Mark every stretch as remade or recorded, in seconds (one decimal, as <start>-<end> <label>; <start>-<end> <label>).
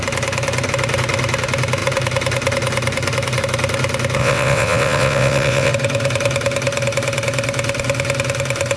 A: 0.0-4.2 recorded; 4.2-5.7 remade; 5.7-8.8 recorded